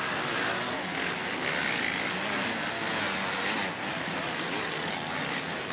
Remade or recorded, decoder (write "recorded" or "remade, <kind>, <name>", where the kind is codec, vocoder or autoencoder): recorded